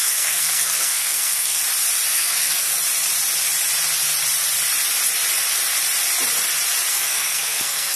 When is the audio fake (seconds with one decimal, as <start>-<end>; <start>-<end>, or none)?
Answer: 0.0-1.6; 2.1-2.7; 6.9-8.0